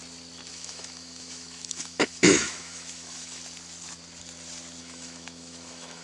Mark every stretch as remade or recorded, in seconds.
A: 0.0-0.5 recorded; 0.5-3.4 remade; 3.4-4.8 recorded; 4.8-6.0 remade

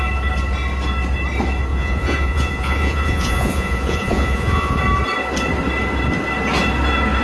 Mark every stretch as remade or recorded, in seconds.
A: 0.0-1.7 recorded; 1.7-4.8 remade; 4.8-7.2 recorded

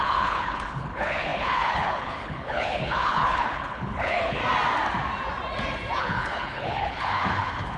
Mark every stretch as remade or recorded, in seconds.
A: 0.0-4.4 remade; 4.4-6.0 recorded; 6.0-7.8 remade

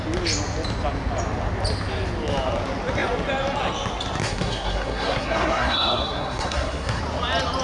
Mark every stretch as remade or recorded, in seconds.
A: 0.0-4.2 recorded; 4.2-7.0 remade; 7.0-7.6 recorded